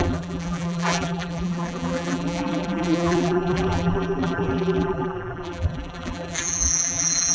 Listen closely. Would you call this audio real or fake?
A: fake